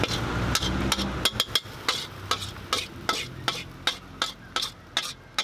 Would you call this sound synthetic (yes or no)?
no